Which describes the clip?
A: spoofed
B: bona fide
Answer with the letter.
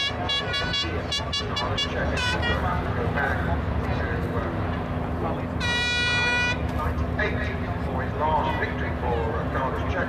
B